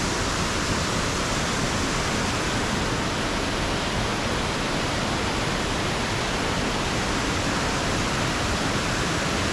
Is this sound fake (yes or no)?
no